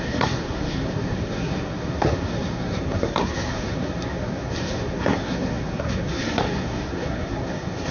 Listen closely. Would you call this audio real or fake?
fake